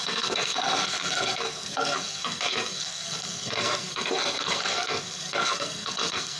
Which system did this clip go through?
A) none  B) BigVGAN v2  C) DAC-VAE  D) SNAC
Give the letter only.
D